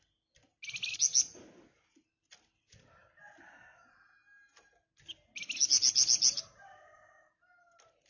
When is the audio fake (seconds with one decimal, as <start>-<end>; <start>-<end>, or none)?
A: none